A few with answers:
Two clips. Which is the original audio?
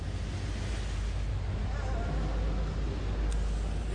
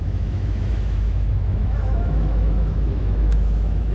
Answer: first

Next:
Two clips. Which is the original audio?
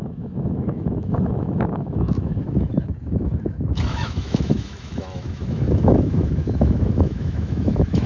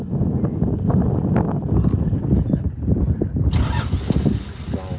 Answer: second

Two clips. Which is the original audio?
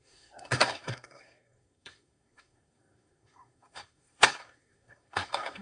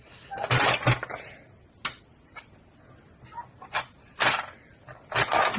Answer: second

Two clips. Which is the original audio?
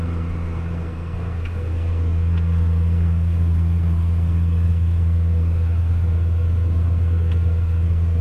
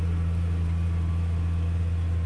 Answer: second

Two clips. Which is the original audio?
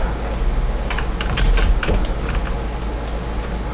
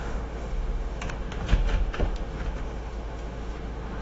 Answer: first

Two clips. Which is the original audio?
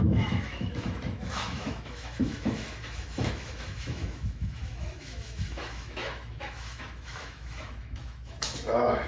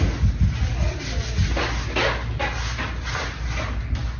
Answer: second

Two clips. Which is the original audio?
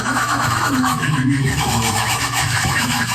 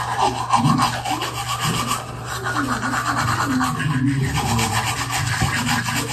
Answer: second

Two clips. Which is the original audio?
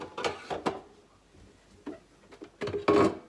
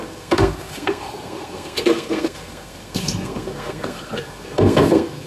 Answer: first